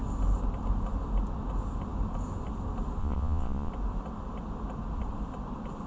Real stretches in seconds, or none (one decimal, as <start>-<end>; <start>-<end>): 0.0-3.0; 3.7-5.9